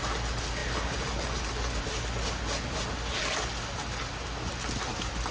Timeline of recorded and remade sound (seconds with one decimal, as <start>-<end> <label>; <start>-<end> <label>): 0.0-5.3 recorded